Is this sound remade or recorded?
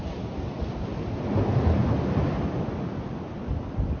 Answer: recorded